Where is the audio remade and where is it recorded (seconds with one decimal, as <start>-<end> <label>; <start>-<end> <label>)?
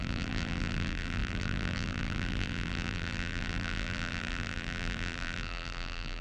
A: 0.0-6.2 remade